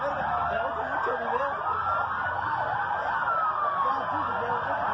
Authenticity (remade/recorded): recorded